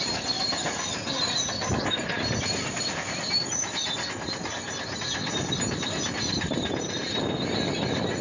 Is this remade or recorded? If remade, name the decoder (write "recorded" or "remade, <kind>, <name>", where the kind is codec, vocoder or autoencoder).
recorded